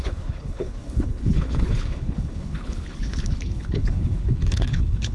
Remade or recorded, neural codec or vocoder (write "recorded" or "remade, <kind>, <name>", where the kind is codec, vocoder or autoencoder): remade, codec, HILCodec